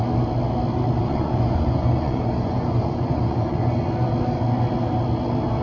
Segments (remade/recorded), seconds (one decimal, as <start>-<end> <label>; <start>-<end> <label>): 0.0-1.0 recorded; 1.0-3.7 remade; 3.7-5.6 recorded